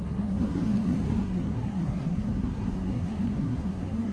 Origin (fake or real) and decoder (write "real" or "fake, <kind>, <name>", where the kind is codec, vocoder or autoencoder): fake, codec, SNAC